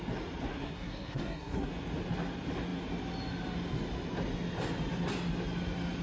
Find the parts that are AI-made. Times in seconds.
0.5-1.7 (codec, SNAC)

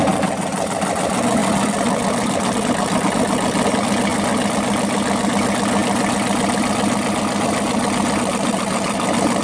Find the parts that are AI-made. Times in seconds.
none

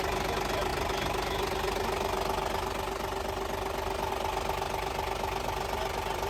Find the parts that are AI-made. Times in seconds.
none

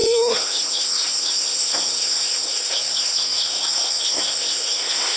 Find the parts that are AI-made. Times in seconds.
0.0-5.2 (codec, SNAC)